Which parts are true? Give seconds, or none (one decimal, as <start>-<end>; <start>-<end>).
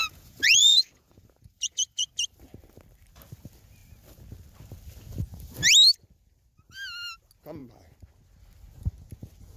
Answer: 2.1-9.6